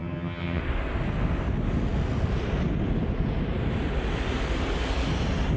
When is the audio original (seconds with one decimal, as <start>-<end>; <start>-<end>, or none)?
0.6-5.6